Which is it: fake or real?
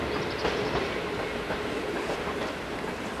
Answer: real